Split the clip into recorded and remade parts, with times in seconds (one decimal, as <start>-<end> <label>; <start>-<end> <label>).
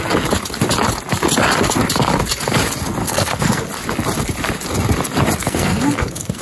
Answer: 0.0-3.0 recorded; 3.0-3.7 remade; 3.7-5.4 recorded; 5.4-6.4 remade